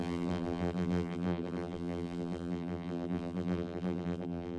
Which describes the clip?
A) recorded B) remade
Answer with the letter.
B